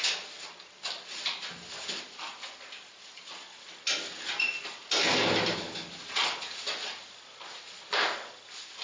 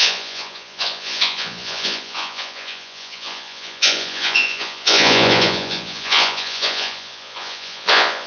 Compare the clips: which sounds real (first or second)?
first